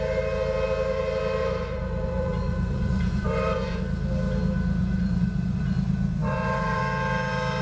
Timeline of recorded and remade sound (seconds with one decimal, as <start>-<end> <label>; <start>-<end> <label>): 0.0-1.4 recorded; 1.4-3.8 remade; 3.8-4.8 recorded; 4.8-5.6 remade; 5.6-6.2 recorded; 6.2-6.8 remade; 6.8-7.6 recorded